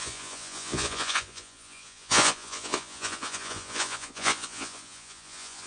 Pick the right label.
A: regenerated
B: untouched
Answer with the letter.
A